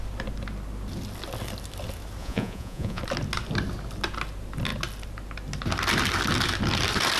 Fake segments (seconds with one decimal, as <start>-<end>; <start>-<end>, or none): 2.2-3.0